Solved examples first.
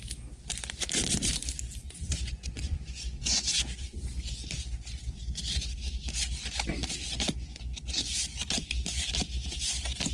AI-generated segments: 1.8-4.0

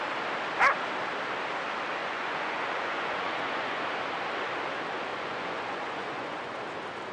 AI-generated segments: 2.0-3.8; 5.1-6.6

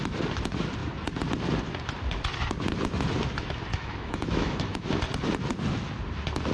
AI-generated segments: 3.7-5.0

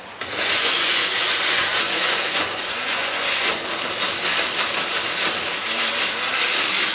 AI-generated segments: 0.0-3.6